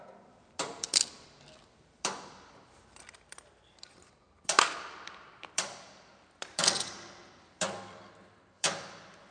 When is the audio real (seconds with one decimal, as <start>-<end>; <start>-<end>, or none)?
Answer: none